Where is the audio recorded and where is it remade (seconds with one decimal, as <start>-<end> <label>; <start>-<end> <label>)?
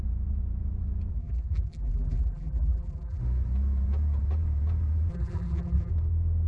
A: 0.0-1.1 recorded; 1.1-3.2 remade; 3.2-5.1 recorded; 5.1-5.9 remade; 5.9-6.5 recorded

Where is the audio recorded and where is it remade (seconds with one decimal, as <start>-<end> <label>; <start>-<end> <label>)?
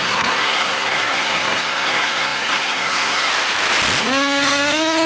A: 0.0-3.3 remade; 3.3-4.0 recorded; 4.0-5.1 remade